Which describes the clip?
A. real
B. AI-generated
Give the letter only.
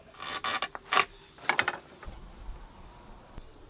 A